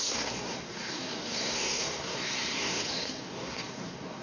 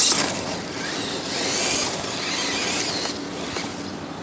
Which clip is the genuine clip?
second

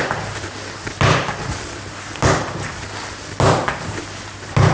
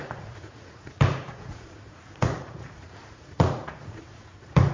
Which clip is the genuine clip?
first